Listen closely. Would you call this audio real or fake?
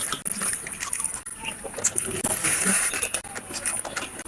real